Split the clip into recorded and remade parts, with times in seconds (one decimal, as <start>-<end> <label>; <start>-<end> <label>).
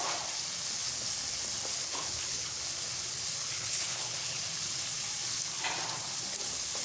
0.0-1.8 recorded; 1.8-2.6 remade; 2.6-3.4 recorded; 3.4-4.4 remade; 4.4-6.8 recorded